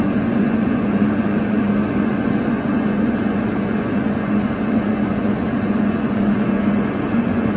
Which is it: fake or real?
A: fake